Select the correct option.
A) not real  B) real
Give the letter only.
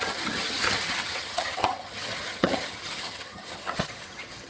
A